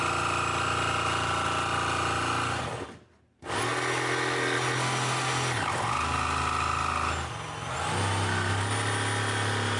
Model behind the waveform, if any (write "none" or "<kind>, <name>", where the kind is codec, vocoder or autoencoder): none